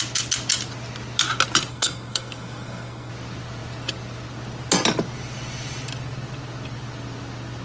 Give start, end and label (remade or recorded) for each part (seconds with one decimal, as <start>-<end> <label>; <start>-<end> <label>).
0.0-1.7 recorded; 1.7-3.1 remade; 3.1-7.6 recorded